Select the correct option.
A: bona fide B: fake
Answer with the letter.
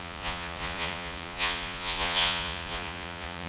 B